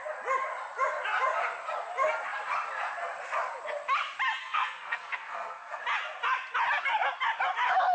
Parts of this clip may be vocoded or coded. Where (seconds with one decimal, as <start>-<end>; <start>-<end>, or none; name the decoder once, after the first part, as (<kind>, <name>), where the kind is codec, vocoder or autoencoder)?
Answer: 4.4-5.8 (codec, SNAC)